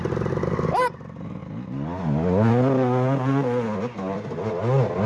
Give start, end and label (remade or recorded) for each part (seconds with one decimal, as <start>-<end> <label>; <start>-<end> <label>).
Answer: 0.0-5.1 recorded